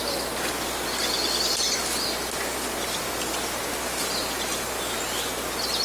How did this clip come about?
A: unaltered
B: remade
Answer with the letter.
A